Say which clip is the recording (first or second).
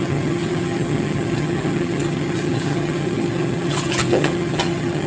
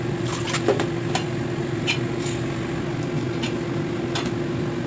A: second